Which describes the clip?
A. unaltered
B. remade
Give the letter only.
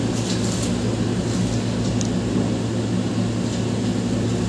A